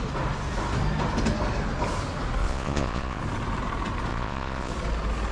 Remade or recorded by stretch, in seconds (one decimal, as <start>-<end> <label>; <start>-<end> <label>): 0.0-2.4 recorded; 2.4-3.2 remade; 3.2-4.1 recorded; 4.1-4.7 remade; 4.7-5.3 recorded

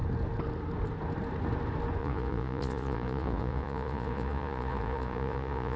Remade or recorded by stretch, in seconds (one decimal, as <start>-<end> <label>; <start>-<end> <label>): 0.0-2.0 recorded; 2.0-5.8 remade

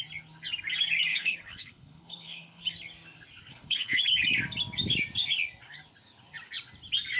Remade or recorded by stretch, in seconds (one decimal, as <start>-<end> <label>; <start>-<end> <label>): 0.0-1.1 recorded; 1.1-2.6 remade; 2.6-3.5 recorded; 3.5-4.0 remade; 4.0-7.2 recorded